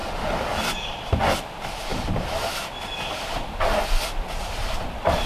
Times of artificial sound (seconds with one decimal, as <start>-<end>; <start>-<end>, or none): 0.0-1.2